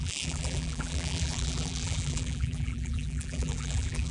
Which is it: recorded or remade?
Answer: remade